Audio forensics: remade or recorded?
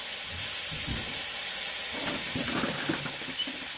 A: recorded